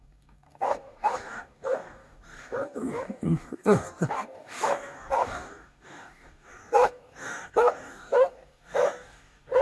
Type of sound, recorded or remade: remade